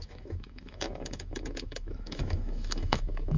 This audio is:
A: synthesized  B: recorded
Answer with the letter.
A